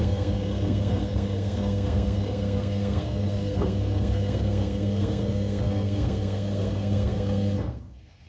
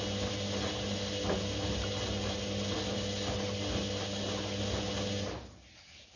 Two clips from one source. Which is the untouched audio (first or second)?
second